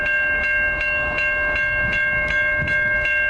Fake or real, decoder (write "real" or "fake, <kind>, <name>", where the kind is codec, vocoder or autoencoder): real